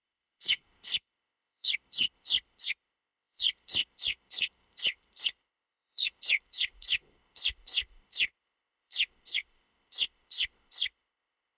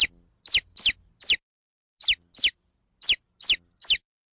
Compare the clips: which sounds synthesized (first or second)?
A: first